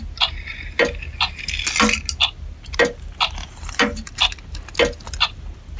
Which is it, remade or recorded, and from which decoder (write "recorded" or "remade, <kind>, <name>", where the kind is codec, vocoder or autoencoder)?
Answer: recorded